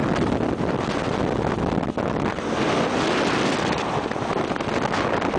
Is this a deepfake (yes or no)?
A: no